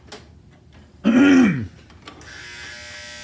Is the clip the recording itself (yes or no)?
yes